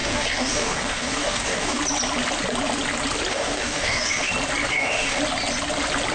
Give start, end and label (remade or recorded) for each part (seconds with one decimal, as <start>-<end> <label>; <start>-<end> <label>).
0.0-1.8 remade; 1.8-3.3 recorded; 3.3-4.3 remade; 4.3-4.7 recorded; 4.7-5.2 remade; 5.2-6.1 recorded